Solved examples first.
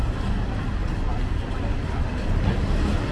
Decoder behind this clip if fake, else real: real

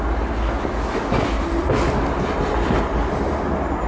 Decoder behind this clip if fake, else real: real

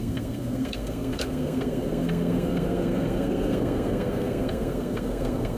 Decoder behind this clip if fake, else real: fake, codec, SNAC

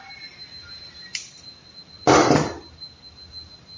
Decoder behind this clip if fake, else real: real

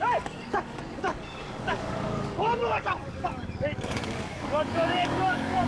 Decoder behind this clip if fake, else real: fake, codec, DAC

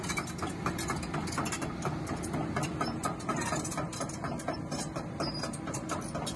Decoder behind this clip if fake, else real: real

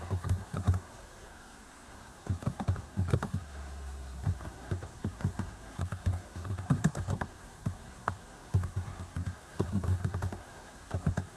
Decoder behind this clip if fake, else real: fake, codec, SNAC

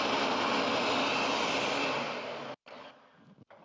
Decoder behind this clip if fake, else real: real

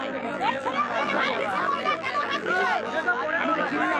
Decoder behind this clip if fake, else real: fake, vocoder, BigVGAN v2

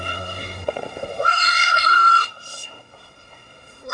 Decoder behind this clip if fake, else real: fake, codec, SNAC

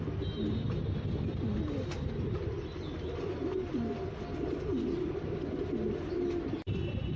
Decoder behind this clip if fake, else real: real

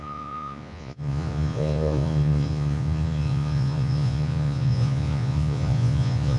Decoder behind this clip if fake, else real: fake, vocoder, Vocos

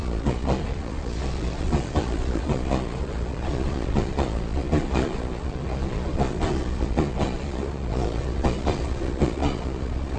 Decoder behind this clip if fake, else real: fake, vocoder, Vocos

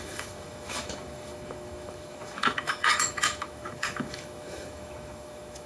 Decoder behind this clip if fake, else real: fake, autoencoder, DAC-VAE